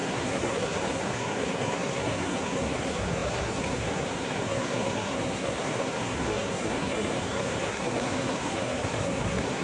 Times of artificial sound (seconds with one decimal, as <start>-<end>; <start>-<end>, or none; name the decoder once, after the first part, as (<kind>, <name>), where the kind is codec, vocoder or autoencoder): 0.0-9.6 (codec, SNAC)